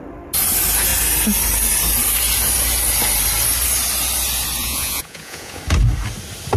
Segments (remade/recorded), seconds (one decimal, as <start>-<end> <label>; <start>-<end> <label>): 0.0-4.6 recorded; 4.6-5.6 remade; 5.6-6.6 recorded